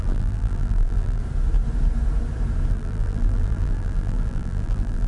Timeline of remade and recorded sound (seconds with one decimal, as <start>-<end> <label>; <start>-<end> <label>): 0.0-1.2 remade; 1.2-2.7 recorded; 2.7-5.1 remade